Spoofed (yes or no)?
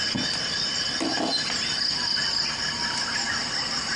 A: no